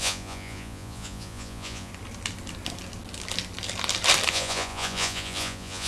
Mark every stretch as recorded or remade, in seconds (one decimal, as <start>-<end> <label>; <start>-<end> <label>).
0.0-1.9 remade; 1.9-4.3 recorded; 4.3-5.9 remade